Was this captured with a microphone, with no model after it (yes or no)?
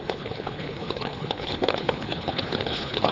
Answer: no